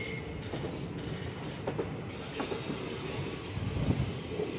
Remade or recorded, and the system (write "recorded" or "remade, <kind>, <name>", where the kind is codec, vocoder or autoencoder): recorded